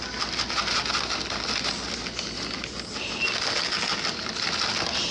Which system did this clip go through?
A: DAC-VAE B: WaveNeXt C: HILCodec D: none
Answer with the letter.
D